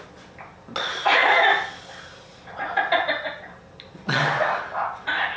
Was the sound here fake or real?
real